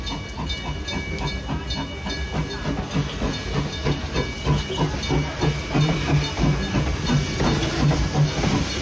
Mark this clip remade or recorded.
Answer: recorded